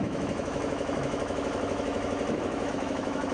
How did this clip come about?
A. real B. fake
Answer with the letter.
B